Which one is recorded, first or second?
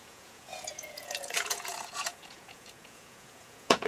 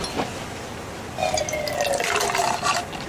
second